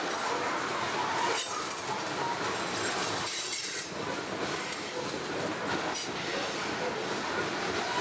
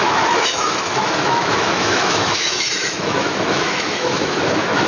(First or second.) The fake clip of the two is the second